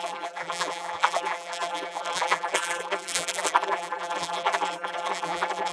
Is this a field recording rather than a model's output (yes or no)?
no